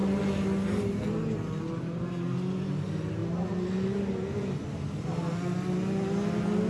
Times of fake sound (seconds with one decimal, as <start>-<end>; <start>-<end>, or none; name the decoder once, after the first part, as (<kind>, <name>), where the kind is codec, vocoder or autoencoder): none